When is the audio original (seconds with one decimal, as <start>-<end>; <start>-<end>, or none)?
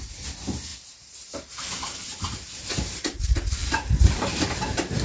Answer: 0.0-0.7; 3.2-3.6; 4.6-5.0